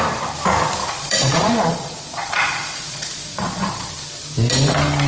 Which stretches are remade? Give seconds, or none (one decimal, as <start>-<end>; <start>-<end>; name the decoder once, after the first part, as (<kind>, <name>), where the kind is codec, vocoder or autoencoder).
0.8-3.9 (vocoder, Vocos)